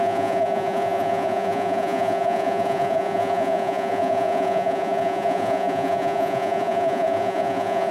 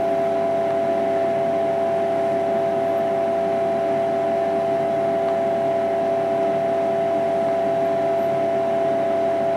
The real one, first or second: second